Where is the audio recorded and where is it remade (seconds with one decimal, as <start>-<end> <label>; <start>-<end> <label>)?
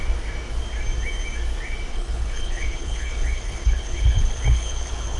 0.0-1.9 recorded; 1.9-5.2 remade